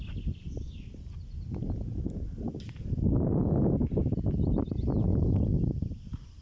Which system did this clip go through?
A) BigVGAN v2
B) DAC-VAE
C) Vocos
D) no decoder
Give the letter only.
D